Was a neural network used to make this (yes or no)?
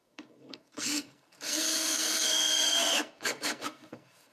yes